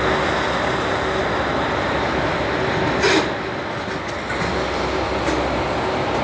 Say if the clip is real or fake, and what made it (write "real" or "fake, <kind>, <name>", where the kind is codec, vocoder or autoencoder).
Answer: real